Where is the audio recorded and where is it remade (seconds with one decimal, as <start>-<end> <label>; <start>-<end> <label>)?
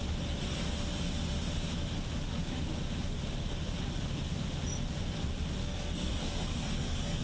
0.0-5.6 recorded; 5.6-7.2 remade